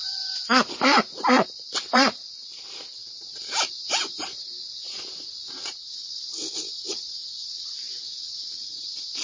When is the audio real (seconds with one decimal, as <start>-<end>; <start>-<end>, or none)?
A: 0.0-1.0